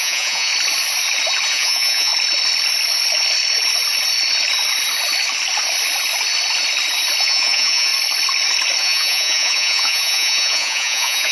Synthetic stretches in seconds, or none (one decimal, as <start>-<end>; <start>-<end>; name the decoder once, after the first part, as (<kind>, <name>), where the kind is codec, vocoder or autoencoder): 0.0-0.5 (vocoder, Vocos); 1.5-2.1; 7.2-7.9; 8.8-11.3